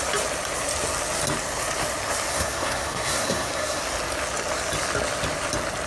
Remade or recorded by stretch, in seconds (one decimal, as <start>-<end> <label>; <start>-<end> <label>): 0.0-2.3 recorded; 2.3-3.8 remade; 3.8-5.9 recorded